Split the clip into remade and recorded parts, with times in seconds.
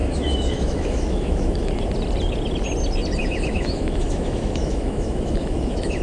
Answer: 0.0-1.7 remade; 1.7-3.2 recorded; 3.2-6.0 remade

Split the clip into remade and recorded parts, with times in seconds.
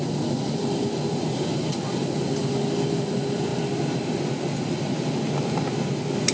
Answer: 0.0-6.3 recorded